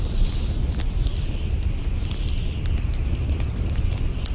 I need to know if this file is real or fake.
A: real